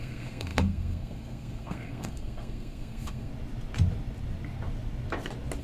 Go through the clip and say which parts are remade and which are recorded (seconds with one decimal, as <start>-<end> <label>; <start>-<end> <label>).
0.0-3.3 remade; 3.3-5.6 recorded